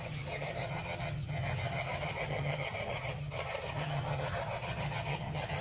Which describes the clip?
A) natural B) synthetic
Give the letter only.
B